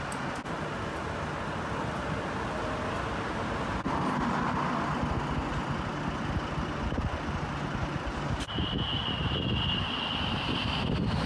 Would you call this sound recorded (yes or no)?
yes